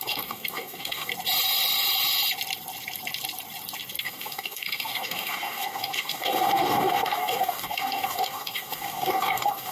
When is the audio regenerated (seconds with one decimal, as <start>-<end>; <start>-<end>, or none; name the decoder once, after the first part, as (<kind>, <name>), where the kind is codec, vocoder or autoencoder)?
0.0-1.1 (codec, DAC); 4.0-9.7